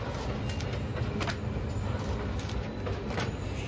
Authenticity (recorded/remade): recorded